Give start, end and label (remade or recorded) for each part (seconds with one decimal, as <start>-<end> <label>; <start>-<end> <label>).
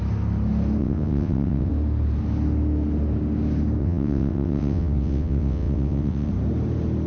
0.0-0.8 recorded; 0.8-1.7 remade; 1.7-3.8 recorded; 3.8-6.3 remade; 6.3-7.1 recorded